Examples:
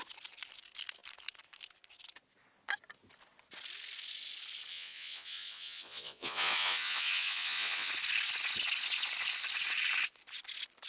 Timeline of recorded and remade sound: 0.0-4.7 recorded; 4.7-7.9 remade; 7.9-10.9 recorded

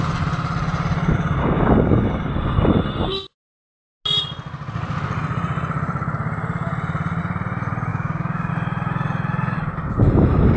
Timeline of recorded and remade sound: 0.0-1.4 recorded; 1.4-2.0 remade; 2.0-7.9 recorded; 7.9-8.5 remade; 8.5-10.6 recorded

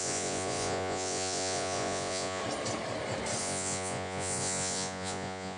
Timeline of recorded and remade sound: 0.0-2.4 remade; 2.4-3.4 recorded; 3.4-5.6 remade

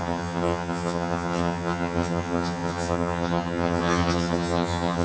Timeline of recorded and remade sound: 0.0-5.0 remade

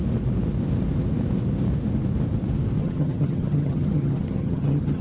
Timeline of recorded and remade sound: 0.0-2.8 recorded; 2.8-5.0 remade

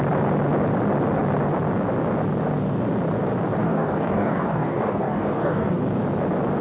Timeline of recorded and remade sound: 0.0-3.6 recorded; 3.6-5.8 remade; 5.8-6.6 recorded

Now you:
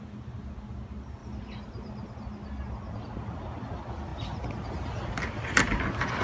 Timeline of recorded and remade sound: 0.0-6.2 recorded

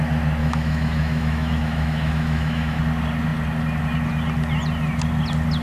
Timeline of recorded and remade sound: 0.0-0.4 recorded; 0.4-2.8 remade; 2.8-5.6 recorded